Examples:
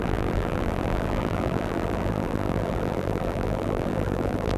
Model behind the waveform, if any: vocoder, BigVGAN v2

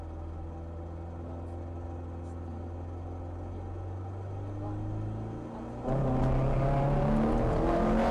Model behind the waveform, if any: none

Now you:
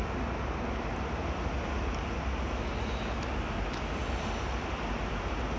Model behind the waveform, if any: none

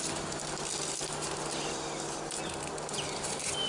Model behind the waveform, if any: none